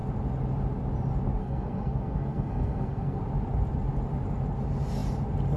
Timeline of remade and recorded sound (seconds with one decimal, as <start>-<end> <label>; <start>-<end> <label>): 0.0-1.4 recorded; 1.4-3.2 remade; 3.2-5.6 recorded